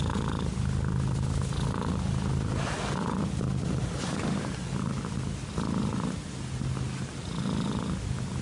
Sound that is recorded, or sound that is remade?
recorded